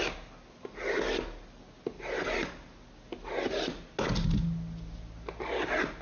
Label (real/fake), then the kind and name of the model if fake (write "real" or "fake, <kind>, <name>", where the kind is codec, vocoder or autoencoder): real